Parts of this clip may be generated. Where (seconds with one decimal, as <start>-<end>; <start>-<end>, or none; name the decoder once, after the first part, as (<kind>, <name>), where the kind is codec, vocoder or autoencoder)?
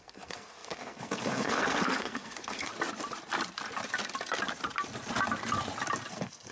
0.0-2.7 (codec, SNAC); 6.1-6.5